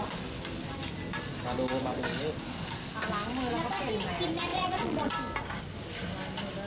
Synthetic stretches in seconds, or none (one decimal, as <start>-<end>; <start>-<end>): 4.5-5.1